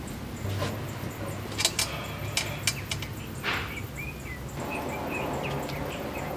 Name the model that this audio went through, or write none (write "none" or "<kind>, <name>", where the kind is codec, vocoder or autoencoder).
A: none